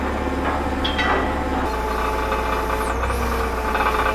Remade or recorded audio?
recorded